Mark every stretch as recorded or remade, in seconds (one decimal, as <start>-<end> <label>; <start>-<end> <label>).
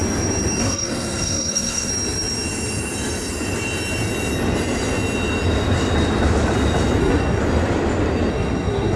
0.0-0.6 recorded; 0.6-1.9 remade; 1.9-7.0 recorded; 7.0-7.4 remade; 7.4-8.3 recorded; 8.3-9.0 remade